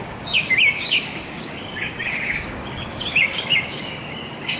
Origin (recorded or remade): remade